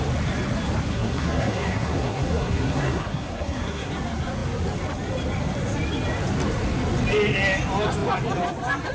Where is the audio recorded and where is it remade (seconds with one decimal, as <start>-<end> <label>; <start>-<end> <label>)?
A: 0.0-0.9 recorded; 0.9-3.9 remade; 3.9-8.9 recorded